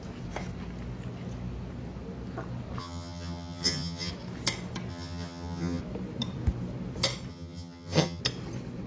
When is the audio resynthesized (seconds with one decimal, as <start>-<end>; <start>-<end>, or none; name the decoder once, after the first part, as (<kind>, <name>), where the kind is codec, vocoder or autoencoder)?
2.8-4.1 (vocoder, HiFi-GAN); 4.9-5.8; 7.3-8.2